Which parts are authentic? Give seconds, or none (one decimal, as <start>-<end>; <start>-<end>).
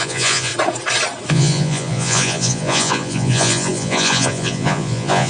0.5-1.3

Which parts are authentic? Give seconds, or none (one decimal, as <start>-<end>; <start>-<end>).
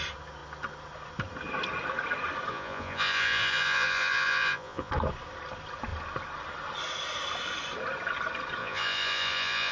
0.0-2.5; 4.9-8.6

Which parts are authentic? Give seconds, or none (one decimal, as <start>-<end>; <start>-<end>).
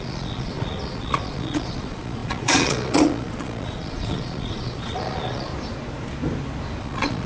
5.5-6.8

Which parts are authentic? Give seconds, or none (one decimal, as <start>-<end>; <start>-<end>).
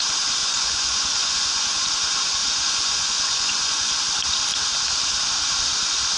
0.0-0.4; 1.9-2.4; 4.0-6.2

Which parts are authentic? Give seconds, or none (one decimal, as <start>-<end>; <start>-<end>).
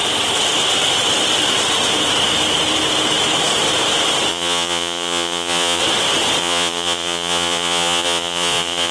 0.0-4.3; 5.8-6.4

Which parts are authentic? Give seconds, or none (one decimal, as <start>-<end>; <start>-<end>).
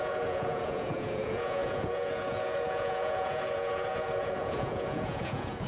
none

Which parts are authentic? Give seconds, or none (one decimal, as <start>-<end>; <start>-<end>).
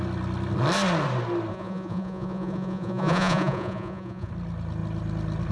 0.0-1.5; 4.3-5.5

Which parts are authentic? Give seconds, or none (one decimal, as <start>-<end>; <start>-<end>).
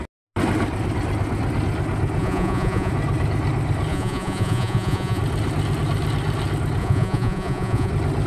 0.0-2.2; 2.9-3.9; 5.2-6.8; 7.9-8.3